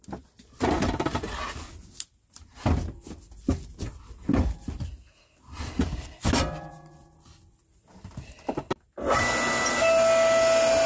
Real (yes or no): yes